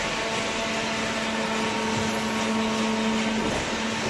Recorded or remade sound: recorded